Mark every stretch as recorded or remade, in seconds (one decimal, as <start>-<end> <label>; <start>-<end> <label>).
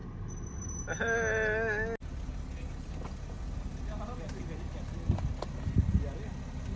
0.0-6.8 recorded